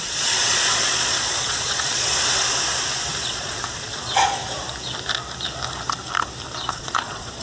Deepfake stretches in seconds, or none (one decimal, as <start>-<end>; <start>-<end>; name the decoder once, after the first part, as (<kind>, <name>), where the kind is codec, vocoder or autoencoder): 0.0-2.1 (vocoder, Vocos); 3.3-4.4; 6.7-7.4